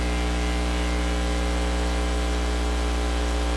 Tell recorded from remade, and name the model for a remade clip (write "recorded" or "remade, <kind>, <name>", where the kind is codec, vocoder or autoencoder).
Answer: recorded